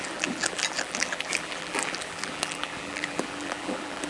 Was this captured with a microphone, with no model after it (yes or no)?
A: no